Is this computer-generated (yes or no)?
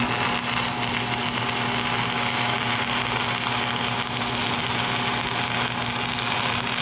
no